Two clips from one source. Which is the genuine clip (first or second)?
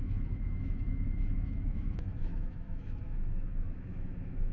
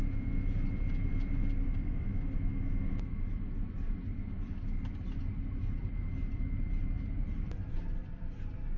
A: second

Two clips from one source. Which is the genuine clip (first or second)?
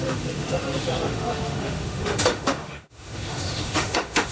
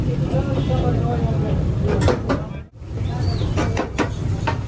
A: second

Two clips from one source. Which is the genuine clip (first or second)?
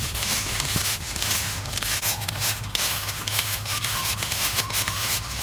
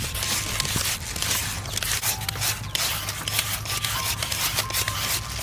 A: second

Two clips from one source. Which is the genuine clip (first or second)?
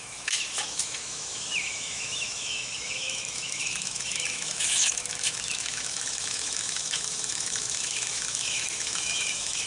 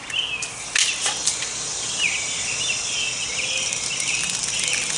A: second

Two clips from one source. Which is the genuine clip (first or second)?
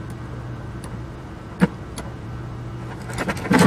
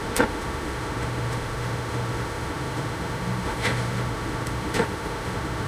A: first